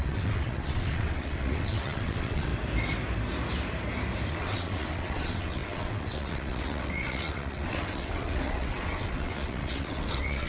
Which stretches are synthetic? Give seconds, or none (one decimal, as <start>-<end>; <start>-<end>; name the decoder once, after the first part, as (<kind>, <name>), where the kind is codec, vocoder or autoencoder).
0.0-2.5 (vocoder, WaveNeXt); 4.3-10.5